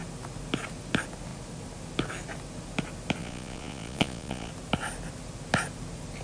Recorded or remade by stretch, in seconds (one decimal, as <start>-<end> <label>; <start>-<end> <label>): 0.0-3.2 recorded; 3.2-4.5 remade; 4.5-6.2 recorded